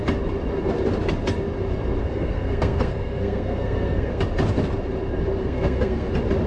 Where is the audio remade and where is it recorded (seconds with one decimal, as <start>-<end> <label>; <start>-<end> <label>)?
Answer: 0.0-2.0 recorded; 2.0-4.2 remade; 4.2-5.4 recorded; 5.4-6.1 remade; 6.1-6.5 recorded